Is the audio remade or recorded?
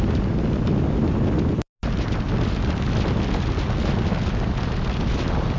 recorded